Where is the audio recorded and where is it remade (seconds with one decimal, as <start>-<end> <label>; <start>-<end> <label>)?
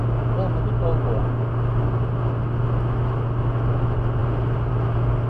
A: 0.0-5.3 recorded